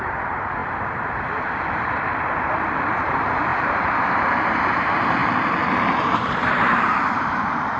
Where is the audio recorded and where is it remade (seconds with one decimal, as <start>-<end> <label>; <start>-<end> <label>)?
0.0-7.8 remade